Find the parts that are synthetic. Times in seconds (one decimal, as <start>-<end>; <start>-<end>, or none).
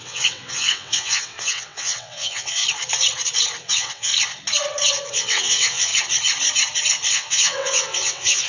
0.0-2.6; 3.6-4.1; 5.1-5.9; 7.1-8.5